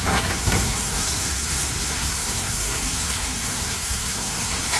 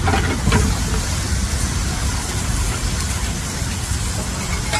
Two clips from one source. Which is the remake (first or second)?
first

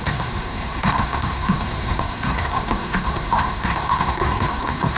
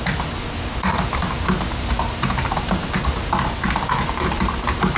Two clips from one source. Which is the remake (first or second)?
first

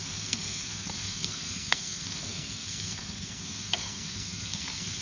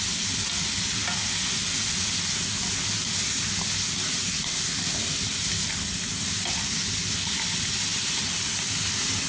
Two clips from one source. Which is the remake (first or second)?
first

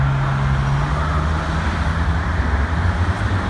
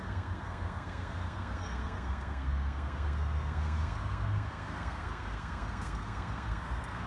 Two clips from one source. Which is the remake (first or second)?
second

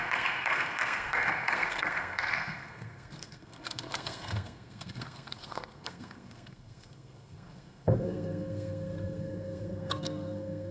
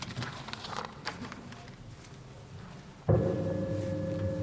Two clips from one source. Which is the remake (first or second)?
first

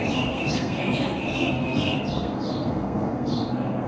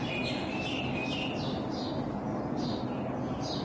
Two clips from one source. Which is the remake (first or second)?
first